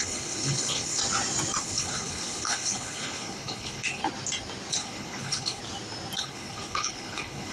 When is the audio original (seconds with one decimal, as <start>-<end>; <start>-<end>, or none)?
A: 1.0-1.6; 4.0-4.7; 5.6-6.2